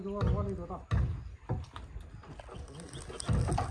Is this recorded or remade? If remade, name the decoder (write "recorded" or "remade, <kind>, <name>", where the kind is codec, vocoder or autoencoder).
recorded